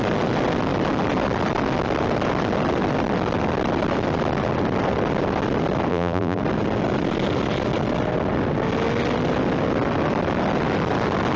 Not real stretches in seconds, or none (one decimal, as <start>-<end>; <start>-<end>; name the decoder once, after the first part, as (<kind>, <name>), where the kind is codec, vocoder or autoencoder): 5.9-6.4 (vocoder, BigVGAN v2)